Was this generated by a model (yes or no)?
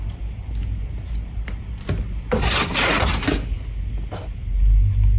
no